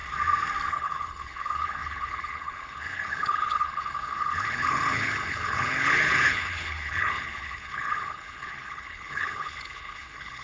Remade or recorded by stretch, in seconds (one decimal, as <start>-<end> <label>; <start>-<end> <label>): 0.0-0.7 recorded; 0.7-10.4 remade